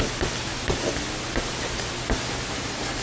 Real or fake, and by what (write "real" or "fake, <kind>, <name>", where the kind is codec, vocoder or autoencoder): real